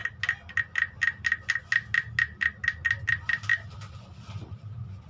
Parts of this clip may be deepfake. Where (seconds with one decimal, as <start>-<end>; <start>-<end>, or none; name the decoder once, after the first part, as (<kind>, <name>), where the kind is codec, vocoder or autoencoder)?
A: 3.1-5.1 (vocoder, BigVGAN v2)

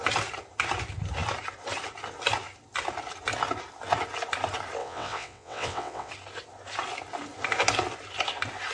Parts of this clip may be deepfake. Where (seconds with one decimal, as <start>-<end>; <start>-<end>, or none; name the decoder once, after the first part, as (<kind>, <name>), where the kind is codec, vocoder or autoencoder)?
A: 4.8-6.1 (vocoder, WaveNeXt)

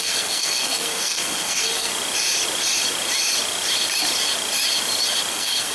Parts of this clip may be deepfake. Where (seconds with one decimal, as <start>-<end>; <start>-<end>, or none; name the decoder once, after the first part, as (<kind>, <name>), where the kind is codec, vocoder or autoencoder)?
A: 0.0-1.9 (codec, SNAC); 5.3-5.7

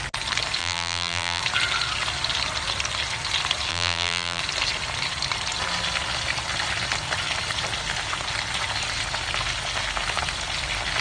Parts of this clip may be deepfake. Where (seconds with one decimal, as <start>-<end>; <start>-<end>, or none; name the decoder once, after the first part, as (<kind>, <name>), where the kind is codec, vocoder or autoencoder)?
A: 0.6-1.4 (vocoder, BigVGAN v2); 3.7-4.4

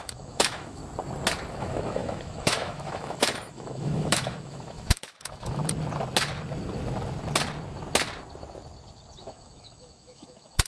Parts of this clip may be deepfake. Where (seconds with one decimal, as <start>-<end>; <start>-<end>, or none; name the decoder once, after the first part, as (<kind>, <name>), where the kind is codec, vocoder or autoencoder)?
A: 0.0-0.8 (autoencoder, DAC-VAE); 1.5-5.6; 9.2-10.7

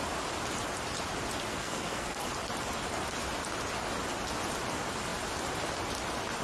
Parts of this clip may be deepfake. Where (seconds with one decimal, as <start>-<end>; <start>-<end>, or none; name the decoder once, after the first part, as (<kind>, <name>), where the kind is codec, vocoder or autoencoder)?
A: 1.5-2.3 (codec, SNAC)

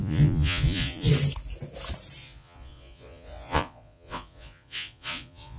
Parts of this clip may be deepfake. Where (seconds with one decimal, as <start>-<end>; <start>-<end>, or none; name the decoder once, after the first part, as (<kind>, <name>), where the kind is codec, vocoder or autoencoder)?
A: 0.0-1.1 (vocoder, Vocos); 2.2-5.6

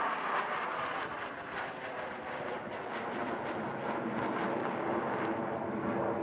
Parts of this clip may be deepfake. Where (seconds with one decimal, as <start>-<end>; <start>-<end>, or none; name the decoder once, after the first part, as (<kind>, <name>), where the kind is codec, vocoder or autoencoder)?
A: 4.6-5.3 (codec, DAC)